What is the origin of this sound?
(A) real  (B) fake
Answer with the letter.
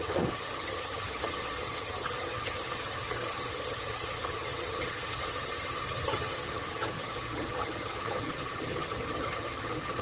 B